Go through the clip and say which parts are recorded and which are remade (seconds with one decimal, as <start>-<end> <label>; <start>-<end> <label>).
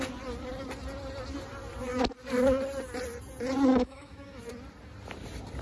0.0-3.7 recorded; 3.7-4.4 remade; 4.4-5.6 recorded